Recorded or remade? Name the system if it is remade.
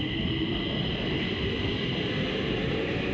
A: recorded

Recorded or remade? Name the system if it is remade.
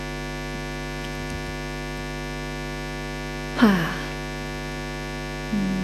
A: recorded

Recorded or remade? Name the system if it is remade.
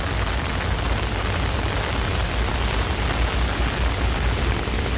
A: recorded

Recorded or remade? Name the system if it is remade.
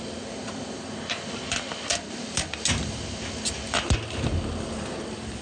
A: recorded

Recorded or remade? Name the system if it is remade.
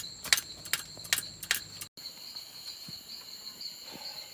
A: recorded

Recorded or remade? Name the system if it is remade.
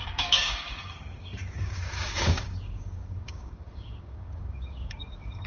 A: remade, codec, DAC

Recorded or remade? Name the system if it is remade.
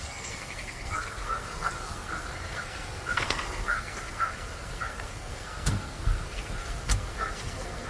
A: remade, codec, SNAC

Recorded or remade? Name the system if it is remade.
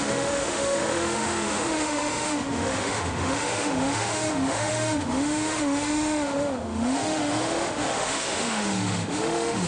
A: remade, autoencoder, DAC-VAE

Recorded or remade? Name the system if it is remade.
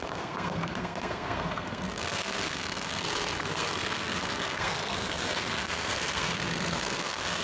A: remade, codec, SNAC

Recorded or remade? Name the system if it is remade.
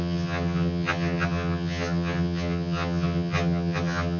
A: remade, vocoder, HiFi-GAN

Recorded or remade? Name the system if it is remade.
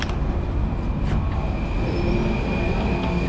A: recorded